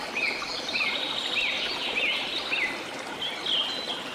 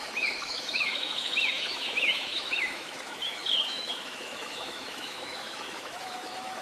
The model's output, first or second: second